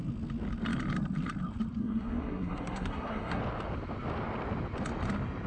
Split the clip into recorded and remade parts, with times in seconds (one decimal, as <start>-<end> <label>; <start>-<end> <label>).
0.0-1.8 recorded; 1.8-3.4 remade; 3.4-5.5 recorded